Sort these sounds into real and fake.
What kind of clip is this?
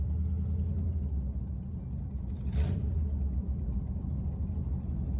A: real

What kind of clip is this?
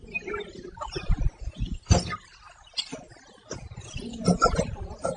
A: real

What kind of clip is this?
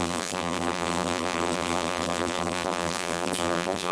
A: fake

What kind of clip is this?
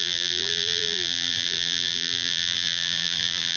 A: fake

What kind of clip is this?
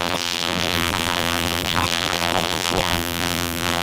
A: fake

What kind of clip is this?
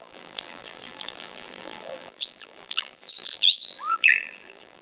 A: fake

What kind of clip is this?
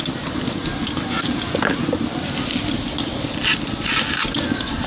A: real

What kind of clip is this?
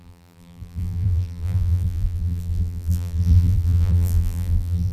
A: fake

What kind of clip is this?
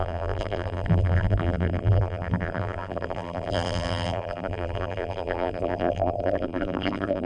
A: fake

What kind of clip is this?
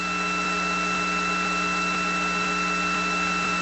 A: fake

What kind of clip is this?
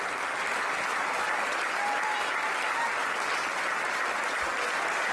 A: real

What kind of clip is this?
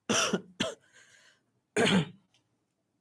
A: real